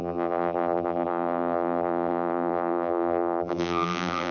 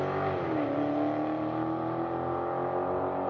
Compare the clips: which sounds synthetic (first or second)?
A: first